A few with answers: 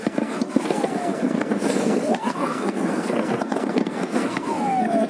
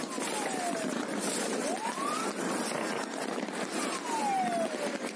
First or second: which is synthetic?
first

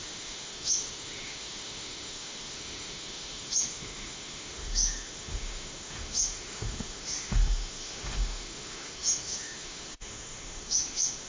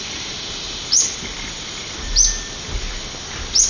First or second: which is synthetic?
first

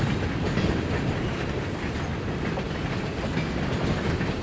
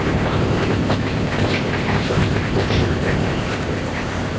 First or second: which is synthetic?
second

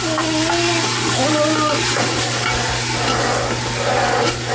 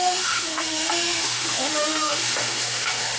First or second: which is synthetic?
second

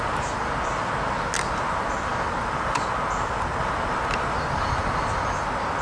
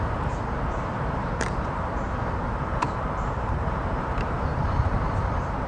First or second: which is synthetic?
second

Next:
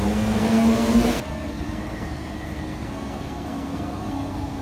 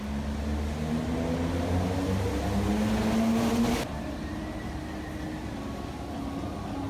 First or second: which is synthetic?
first